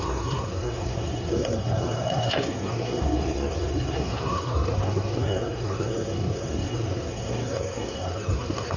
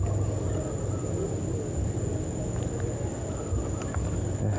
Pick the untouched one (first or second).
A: second